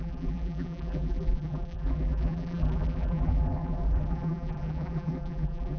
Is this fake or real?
fake